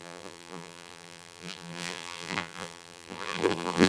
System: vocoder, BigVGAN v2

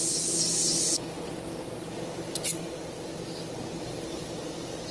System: none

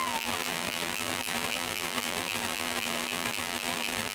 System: vocoder, BigVGAN v2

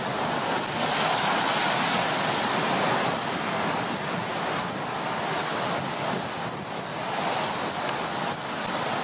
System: none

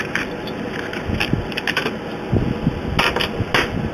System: none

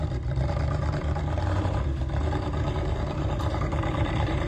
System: vocoder, BigVGAN v2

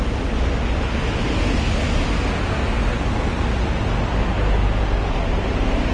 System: none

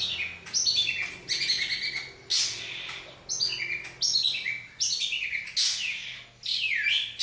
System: none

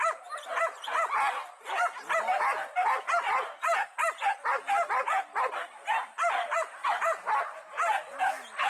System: none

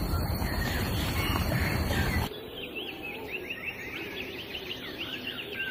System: vocoder, BigVGAN v2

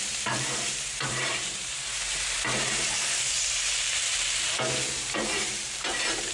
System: vocoder, BigVGAN v2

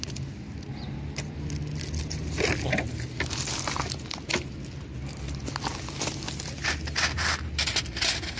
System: none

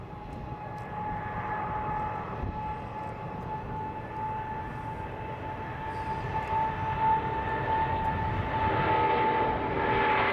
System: none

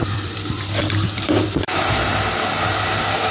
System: vocoder, BigVGAN v2